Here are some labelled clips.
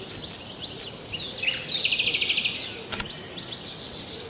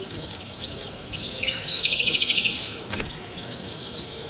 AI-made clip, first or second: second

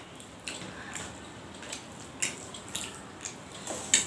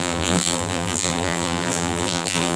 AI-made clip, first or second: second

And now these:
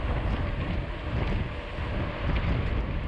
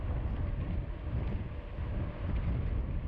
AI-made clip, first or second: second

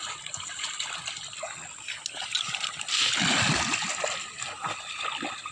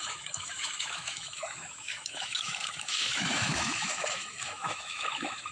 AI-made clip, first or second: second